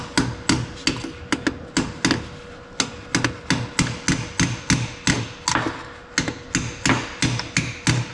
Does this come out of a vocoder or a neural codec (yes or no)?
no